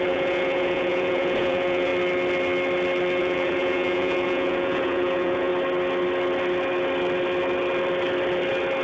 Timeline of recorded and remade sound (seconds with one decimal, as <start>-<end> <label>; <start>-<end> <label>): 0.0-1.9 remade; 1.9-3.2 recorded; 3.2-5.5 remade; 5.5-8.8 recorded